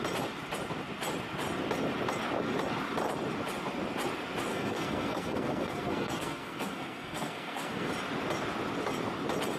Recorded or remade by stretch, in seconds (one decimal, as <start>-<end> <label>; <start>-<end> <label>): 0.0-4.5 recorded; 4.5-7.9 remade; 7.9-9.6 recorded